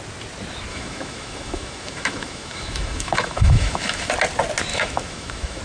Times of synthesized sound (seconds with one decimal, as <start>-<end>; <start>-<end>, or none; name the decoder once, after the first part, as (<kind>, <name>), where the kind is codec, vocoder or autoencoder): 0.7-4.1 (autoencoder, DAC-VAE); 4.7-5.6